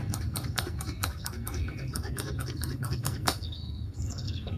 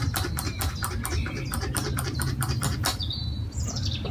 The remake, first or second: first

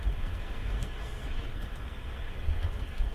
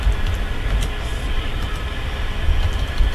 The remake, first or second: first